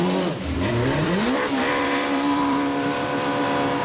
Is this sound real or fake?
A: fake